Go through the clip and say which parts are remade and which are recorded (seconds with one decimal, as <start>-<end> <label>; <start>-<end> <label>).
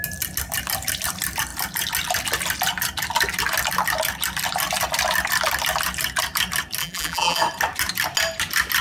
0.0-6.8 recorded; 6.8-7.4 remade; 7.4-8.8 recorded